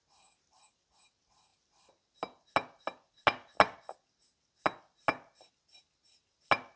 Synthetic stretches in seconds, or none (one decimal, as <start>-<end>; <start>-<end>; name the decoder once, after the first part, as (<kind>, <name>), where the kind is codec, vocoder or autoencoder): none